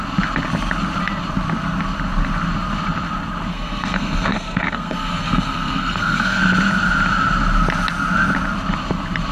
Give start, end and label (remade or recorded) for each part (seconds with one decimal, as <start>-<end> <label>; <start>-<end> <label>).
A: 0.0-3.5 recorded; 3.5-6.4 remade; 6.4-9.3 recorded